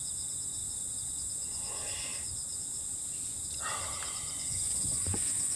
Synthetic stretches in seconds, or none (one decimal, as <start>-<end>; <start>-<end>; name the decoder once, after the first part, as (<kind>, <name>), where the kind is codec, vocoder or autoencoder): 0.0-0.6 (vocoder, Vocos); 1.1-2.1; 4.1-5.6